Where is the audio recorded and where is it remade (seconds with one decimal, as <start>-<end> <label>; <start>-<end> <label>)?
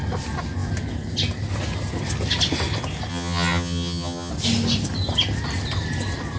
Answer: 0.0-3.1 recorded; 3.1-4.3 remade; 4.3-6.4 recorded